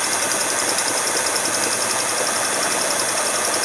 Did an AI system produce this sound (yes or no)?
no